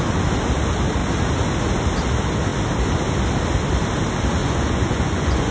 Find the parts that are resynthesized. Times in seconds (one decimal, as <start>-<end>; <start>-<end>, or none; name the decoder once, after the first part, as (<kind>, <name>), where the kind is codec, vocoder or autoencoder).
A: 4.4-5.5 (vocoder, Vocos)

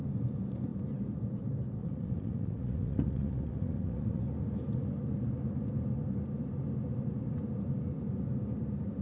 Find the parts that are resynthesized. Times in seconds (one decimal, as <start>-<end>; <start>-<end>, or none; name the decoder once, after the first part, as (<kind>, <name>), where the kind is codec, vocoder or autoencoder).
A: 1.8-4.2 (vocoder, Vocos)

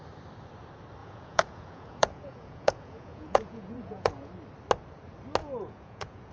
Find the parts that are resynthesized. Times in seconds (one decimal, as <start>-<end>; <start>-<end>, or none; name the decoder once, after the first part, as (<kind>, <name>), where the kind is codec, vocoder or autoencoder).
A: 1.0-4.3 (vocoder, Vocos); 5.4-6.3

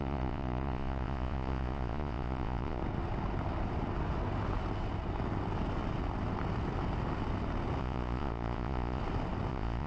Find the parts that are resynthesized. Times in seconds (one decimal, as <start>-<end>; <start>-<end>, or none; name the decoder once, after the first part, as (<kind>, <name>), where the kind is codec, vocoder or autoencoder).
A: 0.0-2.8 (vocoder, Vocos); 7.8-9.0; 9.5-9.9

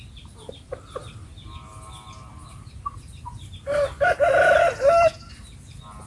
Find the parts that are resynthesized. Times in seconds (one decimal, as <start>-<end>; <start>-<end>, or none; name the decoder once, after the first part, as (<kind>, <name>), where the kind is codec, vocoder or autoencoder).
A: none

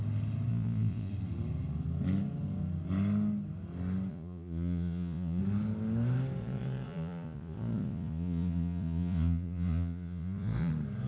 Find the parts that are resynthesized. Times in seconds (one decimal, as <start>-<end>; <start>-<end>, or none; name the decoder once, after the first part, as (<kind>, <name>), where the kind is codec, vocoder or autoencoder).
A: 0.5-1.1 (vocoder, Vocos); 4.1-5.4; 6.4-10.7

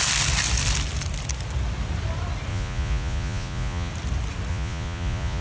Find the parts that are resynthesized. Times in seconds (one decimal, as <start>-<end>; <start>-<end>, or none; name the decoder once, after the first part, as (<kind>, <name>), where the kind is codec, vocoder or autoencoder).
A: 2.5-3.9 (vocoder, Vocos); 4.5-5.4